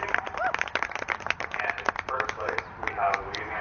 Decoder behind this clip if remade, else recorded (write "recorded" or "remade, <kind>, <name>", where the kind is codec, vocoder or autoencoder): remade, vocoder, BigVGAN v2